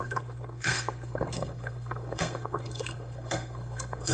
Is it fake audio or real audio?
fake